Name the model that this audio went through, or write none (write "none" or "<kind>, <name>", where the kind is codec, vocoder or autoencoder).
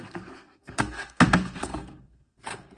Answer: codec, SNAC